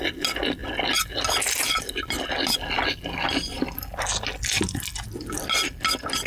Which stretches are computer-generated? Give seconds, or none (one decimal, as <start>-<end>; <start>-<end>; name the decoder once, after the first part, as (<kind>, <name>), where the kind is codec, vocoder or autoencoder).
none